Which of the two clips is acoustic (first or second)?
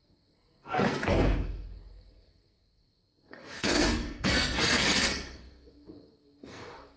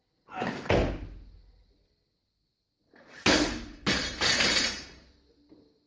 second